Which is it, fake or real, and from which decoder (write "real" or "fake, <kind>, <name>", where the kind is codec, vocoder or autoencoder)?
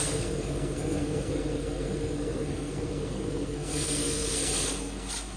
fake, codec, SNAC